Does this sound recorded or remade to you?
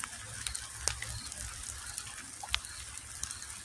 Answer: recorded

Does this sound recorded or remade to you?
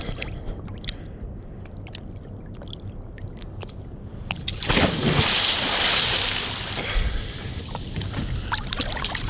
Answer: recorded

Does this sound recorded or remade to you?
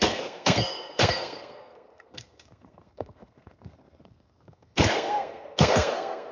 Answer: remade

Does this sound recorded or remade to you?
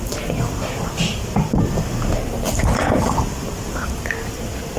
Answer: recorded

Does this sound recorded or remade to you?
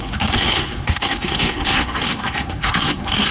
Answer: remade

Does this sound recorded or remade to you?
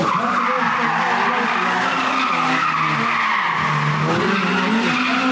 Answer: recorded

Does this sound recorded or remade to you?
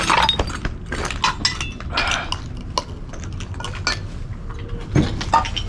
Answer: recorded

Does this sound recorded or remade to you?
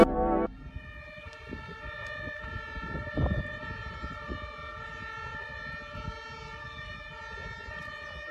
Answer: recorded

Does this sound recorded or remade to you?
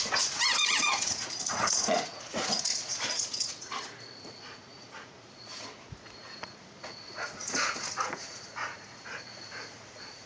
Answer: remade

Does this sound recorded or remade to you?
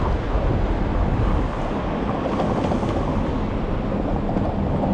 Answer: recorded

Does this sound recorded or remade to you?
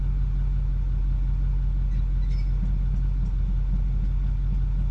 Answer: recorded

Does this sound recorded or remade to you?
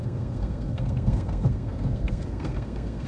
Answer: remade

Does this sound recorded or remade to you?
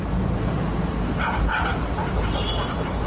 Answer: recorded